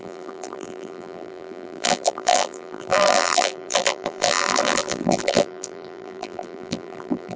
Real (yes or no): no